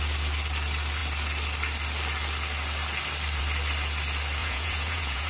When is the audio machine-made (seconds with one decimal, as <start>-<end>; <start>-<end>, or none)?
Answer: 4.4-5.3